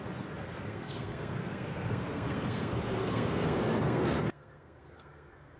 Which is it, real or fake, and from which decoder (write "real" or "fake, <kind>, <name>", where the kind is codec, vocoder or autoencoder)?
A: fake, codec, SNAC